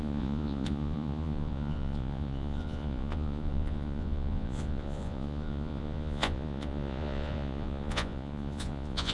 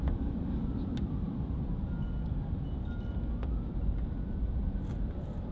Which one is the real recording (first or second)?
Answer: second